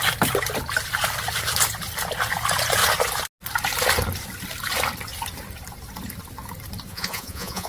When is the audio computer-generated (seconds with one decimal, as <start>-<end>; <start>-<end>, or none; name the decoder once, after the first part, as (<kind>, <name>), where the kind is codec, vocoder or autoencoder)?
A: 6.9-7.7 (vocoder, Vocos)

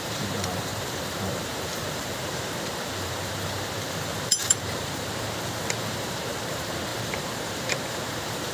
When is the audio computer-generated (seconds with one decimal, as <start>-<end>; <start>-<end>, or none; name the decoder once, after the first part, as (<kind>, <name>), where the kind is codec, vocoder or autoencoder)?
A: 0.0-8.5 (vocoder, BigVGAN v2)

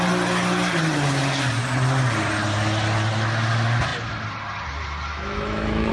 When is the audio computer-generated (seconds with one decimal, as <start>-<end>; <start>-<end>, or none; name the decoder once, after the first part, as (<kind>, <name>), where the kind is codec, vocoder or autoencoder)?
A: 5.1-5.9 (autoencoder, DAC-VAE)

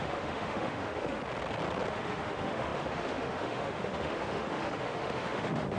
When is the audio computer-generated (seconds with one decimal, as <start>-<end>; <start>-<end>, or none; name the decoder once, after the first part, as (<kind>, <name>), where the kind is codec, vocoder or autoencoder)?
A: 0.0-1.2 (autoencoder, DAC-VAE); 1.9-5.8

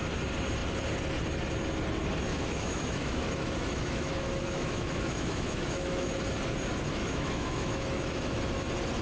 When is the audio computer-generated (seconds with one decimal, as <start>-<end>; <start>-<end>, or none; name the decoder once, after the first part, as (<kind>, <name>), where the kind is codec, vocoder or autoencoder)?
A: 2.3-6.1 (autoencoder, DAC-VAE); 7.0-8.4

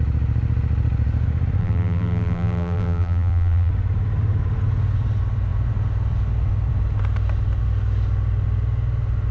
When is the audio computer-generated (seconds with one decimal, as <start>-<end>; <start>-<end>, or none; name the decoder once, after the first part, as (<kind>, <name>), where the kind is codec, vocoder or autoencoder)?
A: 1.6-3.7 (vocoder, BigVGAN v2)

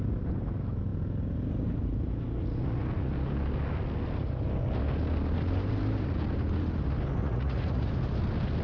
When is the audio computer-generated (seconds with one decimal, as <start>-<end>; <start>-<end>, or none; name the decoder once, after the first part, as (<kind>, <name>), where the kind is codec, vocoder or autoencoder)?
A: 7.2-7.9 (vocoder, Vocos)

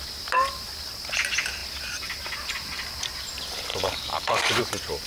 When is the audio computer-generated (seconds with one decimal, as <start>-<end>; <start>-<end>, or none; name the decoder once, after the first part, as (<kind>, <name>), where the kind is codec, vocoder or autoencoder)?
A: 3.7-4.6 (codec, DAC)